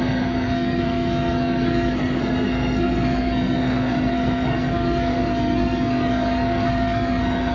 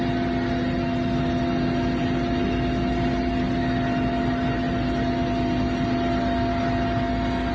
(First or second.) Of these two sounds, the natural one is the second